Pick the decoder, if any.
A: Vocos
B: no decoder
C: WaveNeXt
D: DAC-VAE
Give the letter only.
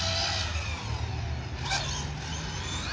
B